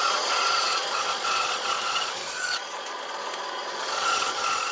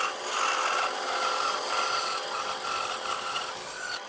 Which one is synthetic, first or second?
first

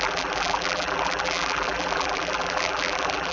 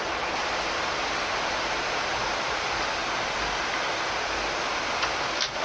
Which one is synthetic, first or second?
first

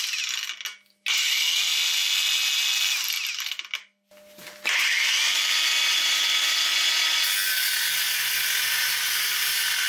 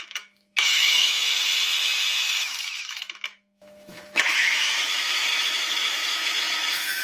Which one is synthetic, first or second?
second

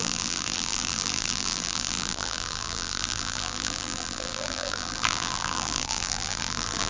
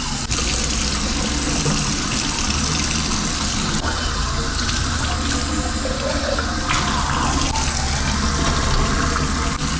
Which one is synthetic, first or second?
first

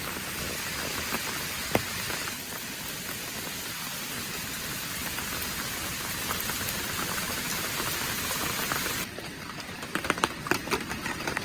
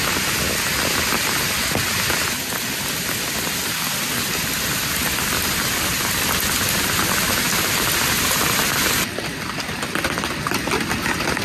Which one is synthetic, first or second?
first